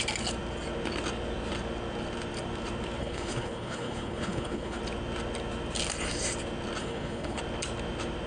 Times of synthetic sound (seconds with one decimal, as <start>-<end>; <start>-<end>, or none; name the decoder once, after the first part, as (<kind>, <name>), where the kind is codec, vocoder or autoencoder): 3.0-4.8 (codec, HILCodec); 6.8-7.4